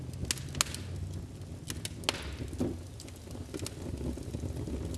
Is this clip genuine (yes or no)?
yes